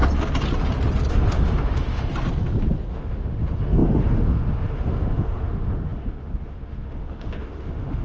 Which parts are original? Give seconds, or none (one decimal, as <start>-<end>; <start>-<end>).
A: 0.0-1.1; 2.1-2.9